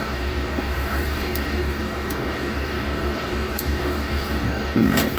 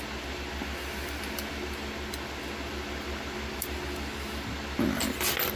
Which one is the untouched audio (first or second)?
second